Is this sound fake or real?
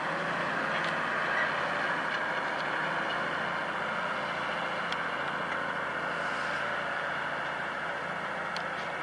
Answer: real